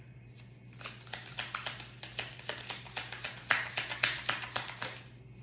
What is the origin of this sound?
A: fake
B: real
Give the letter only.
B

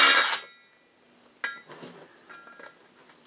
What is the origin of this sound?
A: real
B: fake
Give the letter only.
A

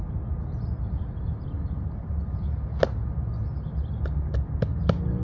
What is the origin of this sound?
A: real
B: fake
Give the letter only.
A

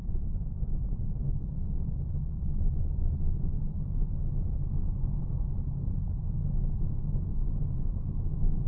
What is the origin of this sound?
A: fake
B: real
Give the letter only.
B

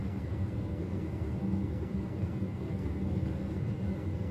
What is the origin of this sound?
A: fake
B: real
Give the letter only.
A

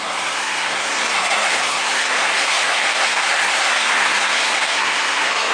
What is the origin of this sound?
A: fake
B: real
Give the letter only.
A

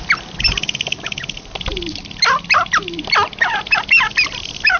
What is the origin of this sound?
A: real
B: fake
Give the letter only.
A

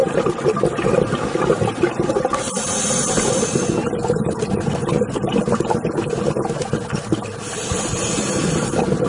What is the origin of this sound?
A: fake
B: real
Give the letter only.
B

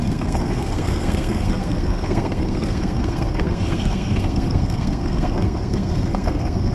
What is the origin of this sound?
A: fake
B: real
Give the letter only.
A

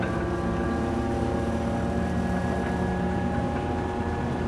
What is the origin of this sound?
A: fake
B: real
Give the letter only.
B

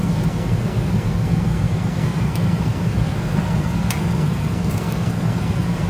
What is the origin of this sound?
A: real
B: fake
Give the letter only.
B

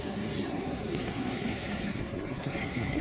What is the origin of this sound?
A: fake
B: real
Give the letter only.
A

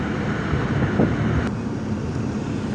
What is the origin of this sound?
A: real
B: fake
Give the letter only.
A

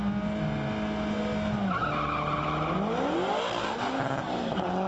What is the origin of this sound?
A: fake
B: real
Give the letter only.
B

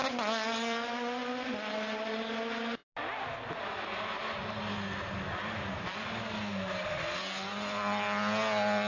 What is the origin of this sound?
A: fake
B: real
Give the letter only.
B